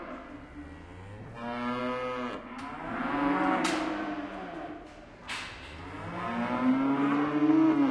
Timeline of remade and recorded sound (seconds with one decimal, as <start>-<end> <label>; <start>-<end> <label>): 0.0-7.9 recorded